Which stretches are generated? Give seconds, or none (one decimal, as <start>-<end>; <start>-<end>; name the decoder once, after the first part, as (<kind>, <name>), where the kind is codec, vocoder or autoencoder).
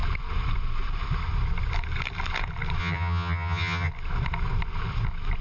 2.8-3.9 (vocoder, HiFi-GAN)